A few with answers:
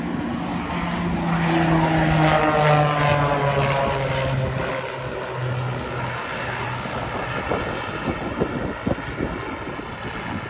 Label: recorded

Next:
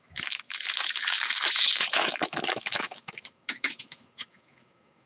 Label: remade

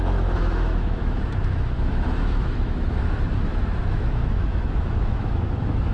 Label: remade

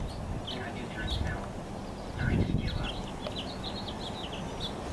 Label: recorded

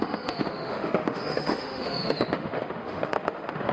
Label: remade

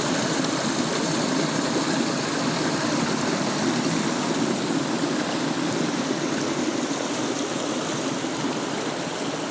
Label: recorded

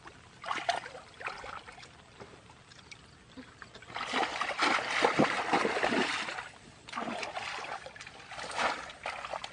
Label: recorded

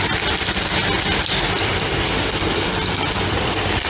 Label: recorded